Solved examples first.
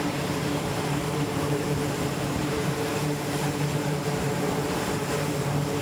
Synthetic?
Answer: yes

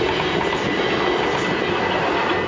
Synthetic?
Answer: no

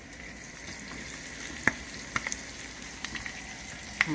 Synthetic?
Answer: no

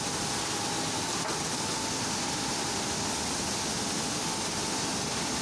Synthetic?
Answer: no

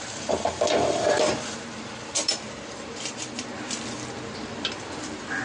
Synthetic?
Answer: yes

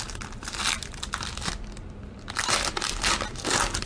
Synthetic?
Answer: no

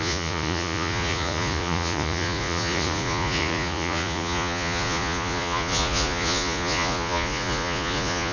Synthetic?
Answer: yes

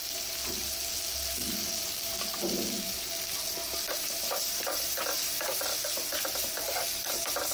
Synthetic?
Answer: no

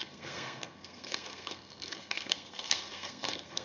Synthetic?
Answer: yes